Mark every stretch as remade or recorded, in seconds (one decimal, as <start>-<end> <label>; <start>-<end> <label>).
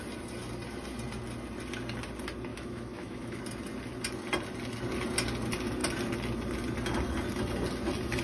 0.0-2.5 recorded; 2.5-3.4 remade; 3.4-8.2 recorded